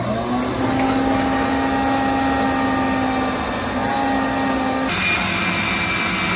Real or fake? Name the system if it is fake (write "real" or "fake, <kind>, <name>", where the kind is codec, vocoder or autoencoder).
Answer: real